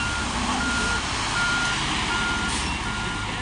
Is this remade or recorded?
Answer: recorded